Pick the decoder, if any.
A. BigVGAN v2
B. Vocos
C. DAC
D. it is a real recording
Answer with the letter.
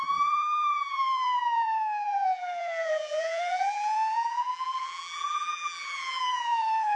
A